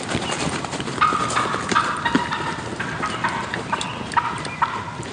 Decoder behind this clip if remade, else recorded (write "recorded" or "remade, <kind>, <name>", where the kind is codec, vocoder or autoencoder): recorded